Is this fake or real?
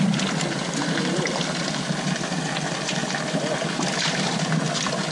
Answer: real